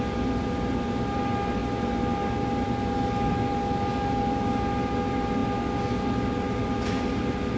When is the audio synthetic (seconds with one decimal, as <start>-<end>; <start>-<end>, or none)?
none